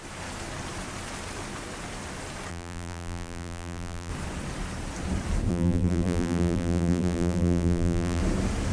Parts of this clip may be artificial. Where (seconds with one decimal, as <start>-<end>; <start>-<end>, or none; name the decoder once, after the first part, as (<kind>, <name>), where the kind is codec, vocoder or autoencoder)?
2.5-4.1 (vocoder, BigVGAN v2); 5.5-8.2